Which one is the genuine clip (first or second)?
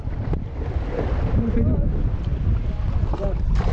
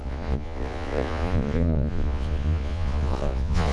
first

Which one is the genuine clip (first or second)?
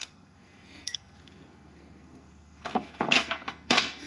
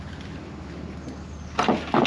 second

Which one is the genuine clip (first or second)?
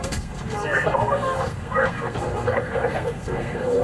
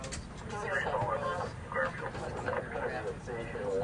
second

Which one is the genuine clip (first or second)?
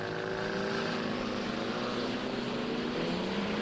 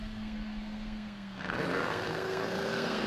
first